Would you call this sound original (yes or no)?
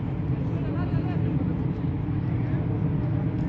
yes